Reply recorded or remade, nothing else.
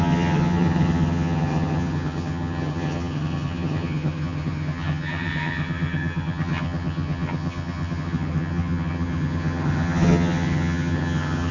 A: remade